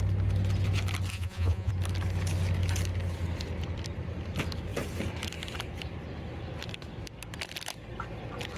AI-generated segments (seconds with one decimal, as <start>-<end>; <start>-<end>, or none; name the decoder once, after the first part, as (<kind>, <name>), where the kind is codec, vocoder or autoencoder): 1.1-1.7 (vocoder, Vocos)